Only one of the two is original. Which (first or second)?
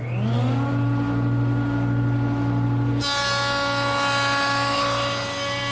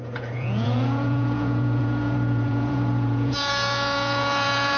first